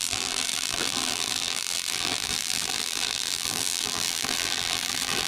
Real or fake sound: fake